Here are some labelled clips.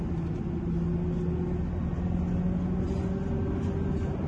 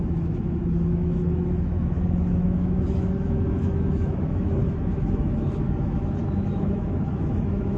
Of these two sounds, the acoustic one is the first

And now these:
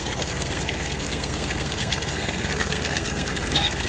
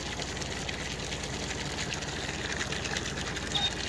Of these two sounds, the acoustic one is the second